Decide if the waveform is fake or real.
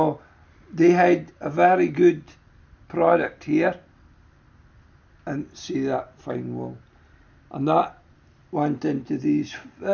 real